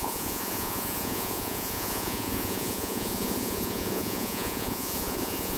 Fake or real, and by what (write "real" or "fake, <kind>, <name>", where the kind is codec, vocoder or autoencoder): fake, vocoder, Vocos